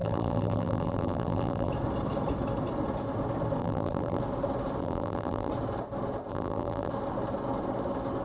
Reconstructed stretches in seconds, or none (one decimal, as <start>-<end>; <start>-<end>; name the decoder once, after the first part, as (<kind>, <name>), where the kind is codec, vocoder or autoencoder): 0.0-1.7 (vocoder, BigVGAN v2); 3.6-4.2; 4.8-5.5; 6.3-6.9